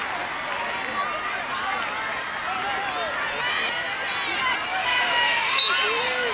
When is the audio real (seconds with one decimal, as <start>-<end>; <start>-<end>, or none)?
0.0-4.7; 5.6-6.3